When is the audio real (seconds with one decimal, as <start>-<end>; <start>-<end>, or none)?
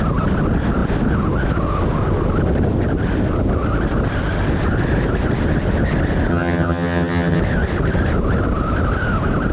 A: 0.0-6.3; 7.4-9.5